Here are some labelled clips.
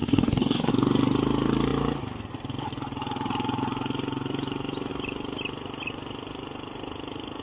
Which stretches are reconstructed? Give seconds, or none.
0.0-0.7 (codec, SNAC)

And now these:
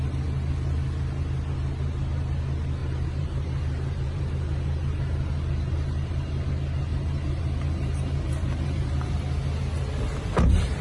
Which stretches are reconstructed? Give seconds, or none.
2.8-6.5 (vocoder, BigVGAN v2); 6.9-9.1

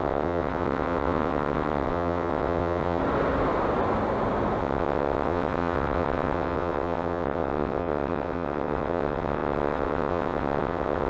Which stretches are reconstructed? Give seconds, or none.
0.0-3.0 (vocoder, WaveNeXt); 4.6-11.1

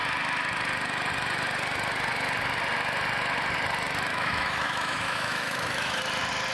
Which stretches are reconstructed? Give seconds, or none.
4.1-6.0 (autoencoder, DAC-VAE)

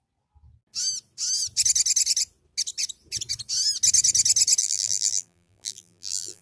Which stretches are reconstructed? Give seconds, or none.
4.6-6.4 (vocoder, BigVGAN v2)

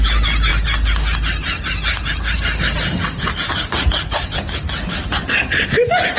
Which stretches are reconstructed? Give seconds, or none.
none